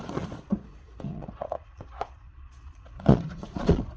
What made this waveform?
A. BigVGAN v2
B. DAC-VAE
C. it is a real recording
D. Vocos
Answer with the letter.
D